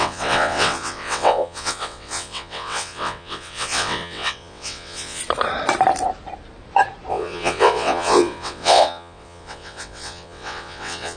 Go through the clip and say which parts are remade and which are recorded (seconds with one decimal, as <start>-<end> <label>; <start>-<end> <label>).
0.0-5.2 remade; 5.2-7.1 recorded; 7.1-11.2 remade